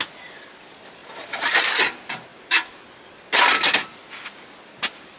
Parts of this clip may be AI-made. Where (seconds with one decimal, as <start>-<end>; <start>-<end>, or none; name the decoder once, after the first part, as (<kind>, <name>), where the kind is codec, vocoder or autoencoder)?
1.0-1.6 (vocoder, BigVGAN v2); 2.3-2.8